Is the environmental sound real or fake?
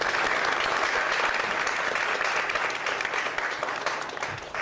real